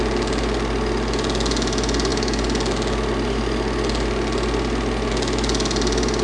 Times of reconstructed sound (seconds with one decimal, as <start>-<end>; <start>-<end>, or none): none